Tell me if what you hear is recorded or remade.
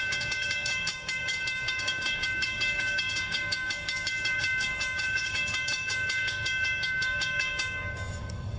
remade